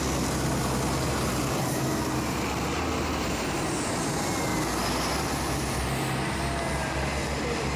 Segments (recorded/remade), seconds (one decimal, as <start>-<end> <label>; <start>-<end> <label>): 0.0-7.8 recorded